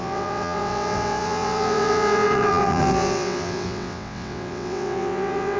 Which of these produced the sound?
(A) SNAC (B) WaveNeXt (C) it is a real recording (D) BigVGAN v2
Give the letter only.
B